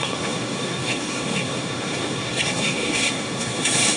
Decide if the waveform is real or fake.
fake